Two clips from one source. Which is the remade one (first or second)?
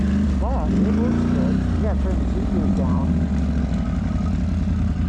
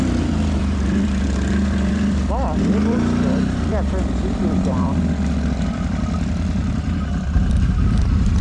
second